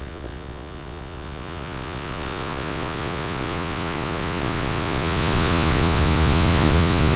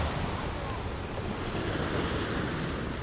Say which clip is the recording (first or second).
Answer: second